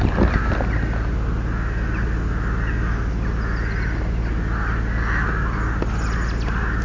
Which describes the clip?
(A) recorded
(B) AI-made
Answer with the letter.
A